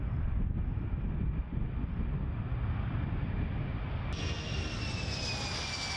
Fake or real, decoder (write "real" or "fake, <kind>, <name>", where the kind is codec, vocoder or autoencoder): real